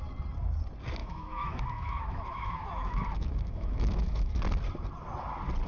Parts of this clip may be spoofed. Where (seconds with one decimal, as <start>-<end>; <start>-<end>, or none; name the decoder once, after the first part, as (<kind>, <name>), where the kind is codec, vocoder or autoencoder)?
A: 1.0-4.4 (autoencoder, DAC-VAE)